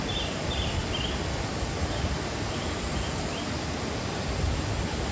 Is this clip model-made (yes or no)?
no